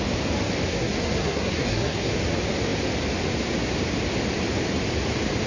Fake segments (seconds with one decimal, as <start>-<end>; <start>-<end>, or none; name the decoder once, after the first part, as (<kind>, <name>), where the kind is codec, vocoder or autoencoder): 0.7-2.1 (codec, SNAC)